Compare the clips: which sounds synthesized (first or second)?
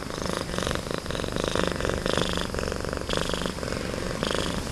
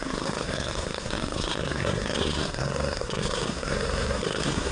second